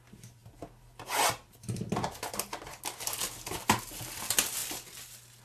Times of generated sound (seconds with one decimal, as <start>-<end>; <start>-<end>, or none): none